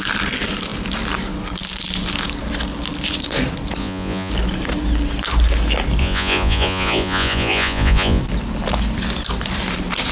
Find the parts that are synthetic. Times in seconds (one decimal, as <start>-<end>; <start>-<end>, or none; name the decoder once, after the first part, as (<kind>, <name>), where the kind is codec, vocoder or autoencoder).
3.8-4.3 (vocoder, Vocos); 6.0-8.2

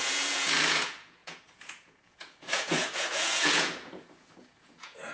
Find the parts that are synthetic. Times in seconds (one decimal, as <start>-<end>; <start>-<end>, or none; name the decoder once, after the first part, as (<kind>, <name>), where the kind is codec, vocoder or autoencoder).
0.0-5.1 (vocoder, Vocos)

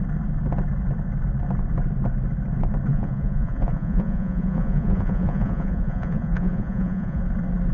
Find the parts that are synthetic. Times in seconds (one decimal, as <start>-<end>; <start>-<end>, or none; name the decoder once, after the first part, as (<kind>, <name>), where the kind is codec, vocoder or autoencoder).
2.9-7.2 (vocoder, Vocos)